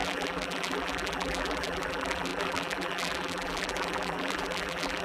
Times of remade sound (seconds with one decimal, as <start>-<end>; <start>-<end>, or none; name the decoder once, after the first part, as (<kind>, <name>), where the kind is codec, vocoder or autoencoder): 0.0-5.0 (vocoder, BigVGAN v2)